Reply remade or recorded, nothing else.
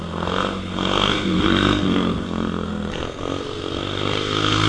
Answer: remade